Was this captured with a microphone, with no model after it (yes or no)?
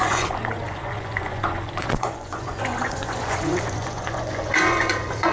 no